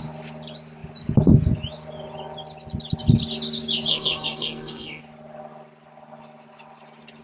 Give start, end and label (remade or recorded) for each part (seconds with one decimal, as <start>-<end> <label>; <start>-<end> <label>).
0.0-3.9 recorded; 3.9-5.0 remade; 5.0-7.2 recorded